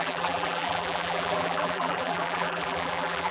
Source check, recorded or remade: remade